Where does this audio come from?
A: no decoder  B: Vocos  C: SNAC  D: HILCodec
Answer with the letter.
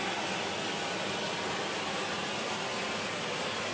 A